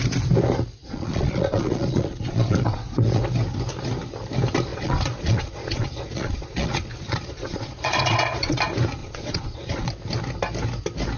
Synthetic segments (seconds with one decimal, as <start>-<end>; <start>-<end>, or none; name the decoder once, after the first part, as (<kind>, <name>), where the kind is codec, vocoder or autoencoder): 0.8-3.2 (vocoder, Vocos); 4.7-8.6; 9.0-9.9